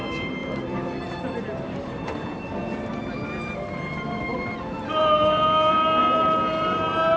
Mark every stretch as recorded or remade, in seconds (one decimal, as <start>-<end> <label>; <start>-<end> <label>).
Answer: 0.0-7.2 remade